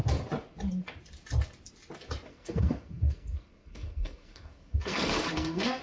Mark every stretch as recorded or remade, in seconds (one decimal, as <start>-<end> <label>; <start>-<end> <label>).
0.0-2.3 recorded; 2.3-5.8 remade